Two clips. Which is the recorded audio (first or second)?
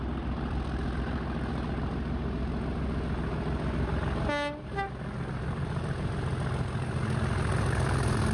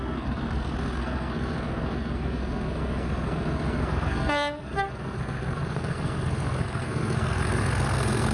first